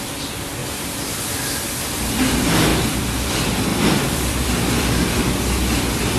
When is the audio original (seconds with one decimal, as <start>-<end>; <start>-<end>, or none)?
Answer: 0.0-0.6; 2.2-2.7; 3.3-3.7; 5.2-6.2